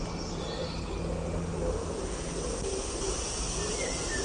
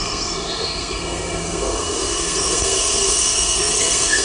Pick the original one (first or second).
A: first